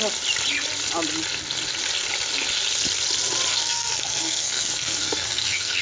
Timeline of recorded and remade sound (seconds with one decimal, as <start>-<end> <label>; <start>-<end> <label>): 0.0-3.5 recorded; 3.5-5.8 remade